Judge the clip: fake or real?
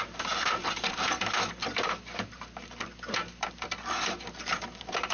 fake